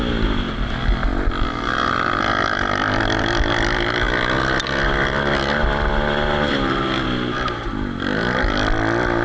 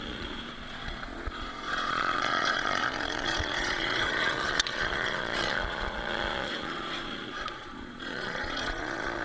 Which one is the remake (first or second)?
second